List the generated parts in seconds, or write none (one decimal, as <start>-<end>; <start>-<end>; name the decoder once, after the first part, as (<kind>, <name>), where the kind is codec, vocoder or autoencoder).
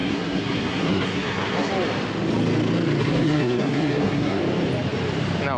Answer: 0.0-1.7 (codec, SNAC); 3.0-4.4